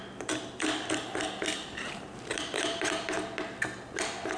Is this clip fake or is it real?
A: real